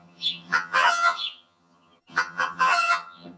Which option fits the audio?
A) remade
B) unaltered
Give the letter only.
A